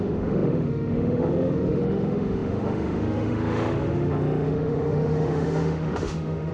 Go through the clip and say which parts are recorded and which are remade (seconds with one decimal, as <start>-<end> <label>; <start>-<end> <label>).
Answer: 0.0-6.5 remade